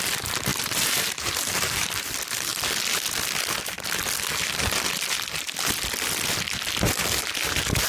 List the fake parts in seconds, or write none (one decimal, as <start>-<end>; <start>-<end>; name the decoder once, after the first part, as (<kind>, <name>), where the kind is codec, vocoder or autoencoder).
0.5-2.1 (vocoder, BigVGAN v2)